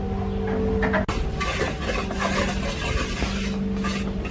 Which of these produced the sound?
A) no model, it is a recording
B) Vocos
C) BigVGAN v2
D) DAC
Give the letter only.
A